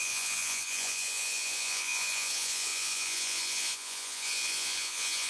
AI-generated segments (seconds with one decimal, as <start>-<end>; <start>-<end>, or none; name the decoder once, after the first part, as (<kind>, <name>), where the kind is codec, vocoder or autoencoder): 0.0-5.3 (vocoder, Vocos)